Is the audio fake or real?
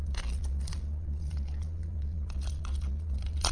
fake